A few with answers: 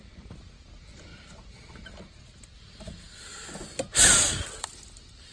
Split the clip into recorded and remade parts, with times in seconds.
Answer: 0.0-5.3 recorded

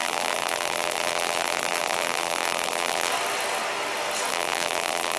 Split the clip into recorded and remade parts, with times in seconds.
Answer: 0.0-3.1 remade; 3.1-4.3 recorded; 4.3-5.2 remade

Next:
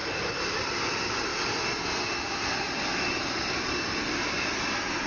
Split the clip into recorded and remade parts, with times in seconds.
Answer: 0.0-1.3 remade; 1.3-4.4 recorded; 4.4-5.1 remade

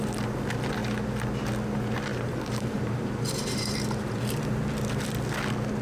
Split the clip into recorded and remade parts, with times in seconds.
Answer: 0.0-2.1 recorded; 2.1-5.1 remade; 5.1-5.8 recorded

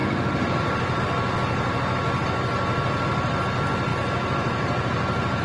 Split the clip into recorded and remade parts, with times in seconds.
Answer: 0.0-1.0 remade; 1.0-5.4 recorded